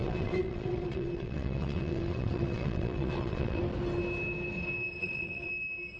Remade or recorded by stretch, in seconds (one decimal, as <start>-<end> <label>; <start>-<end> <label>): 0.0-3.6 remade; 3.6-5.0 recorded; 5.0-5.5 remade; 5.5-6.0 recorded